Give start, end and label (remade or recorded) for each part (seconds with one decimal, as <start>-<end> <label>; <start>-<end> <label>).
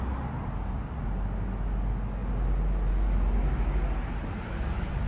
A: 0.0-5.1 recorded